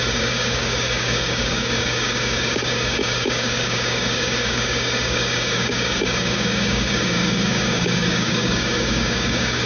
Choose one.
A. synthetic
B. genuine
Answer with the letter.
A